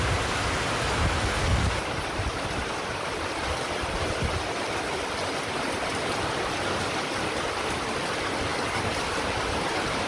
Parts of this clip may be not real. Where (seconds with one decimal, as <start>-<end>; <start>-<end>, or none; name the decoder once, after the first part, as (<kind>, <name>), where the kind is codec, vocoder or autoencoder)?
none